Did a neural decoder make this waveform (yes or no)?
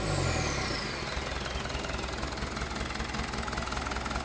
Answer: no